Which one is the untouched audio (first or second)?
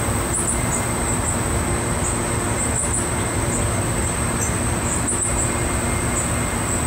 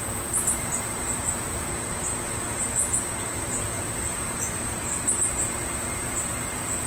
first